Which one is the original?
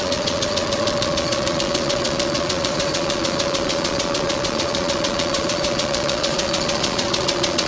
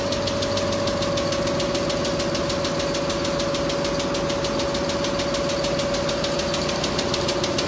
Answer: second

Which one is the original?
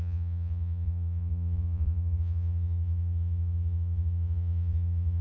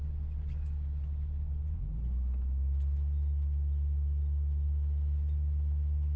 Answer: second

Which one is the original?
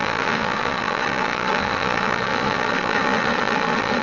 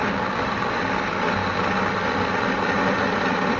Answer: second